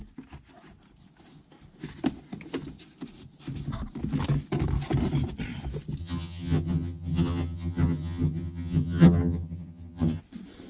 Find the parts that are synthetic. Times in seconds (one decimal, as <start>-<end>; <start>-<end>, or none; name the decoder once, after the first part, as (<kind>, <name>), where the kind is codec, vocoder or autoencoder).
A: 6.0-10.2 (vocoder, HiFi-GAN)